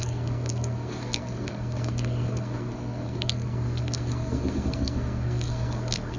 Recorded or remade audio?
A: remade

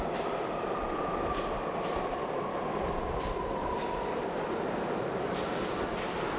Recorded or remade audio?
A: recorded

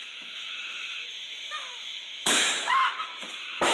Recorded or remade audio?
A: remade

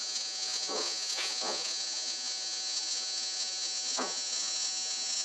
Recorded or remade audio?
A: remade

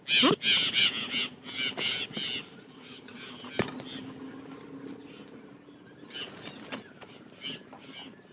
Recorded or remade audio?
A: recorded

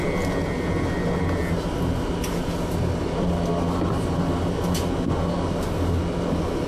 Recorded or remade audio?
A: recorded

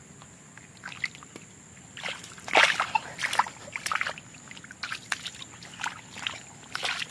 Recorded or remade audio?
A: recorded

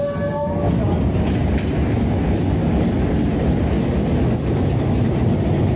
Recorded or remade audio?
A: recorded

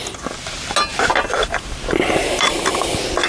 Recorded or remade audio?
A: recorded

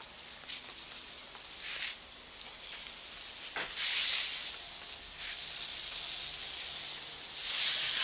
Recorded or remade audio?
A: recorded